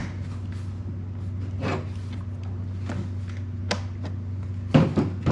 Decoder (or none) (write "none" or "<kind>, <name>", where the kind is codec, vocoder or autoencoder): none